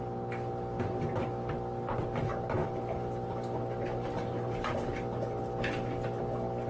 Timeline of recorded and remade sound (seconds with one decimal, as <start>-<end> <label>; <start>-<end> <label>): 0.0-6.7 recorded